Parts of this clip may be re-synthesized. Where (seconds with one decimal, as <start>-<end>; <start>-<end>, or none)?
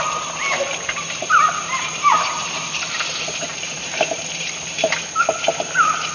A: 1.2-4.9